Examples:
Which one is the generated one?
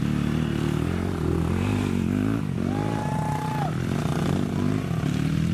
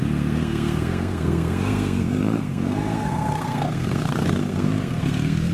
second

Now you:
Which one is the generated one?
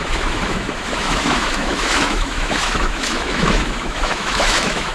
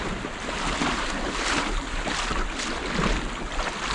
first